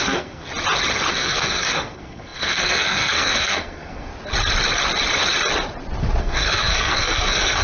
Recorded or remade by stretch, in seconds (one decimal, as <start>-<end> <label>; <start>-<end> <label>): 0.0-0.5 remade; 0.5-1.1 recorded; 1.1-4.1 remade; 4.1-6.2 recorded; 6.2-7.6 remade